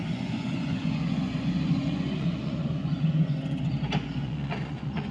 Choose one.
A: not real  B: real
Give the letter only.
A